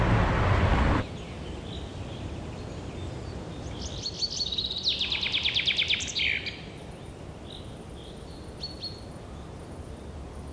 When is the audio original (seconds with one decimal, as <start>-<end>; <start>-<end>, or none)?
0.0-1.9; 4.1-10.5